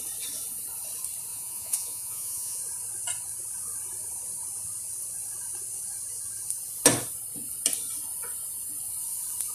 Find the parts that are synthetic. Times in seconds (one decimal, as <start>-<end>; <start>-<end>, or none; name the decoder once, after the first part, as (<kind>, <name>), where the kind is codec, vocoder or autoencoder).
1.3-2.6 (vocoder, Vocos)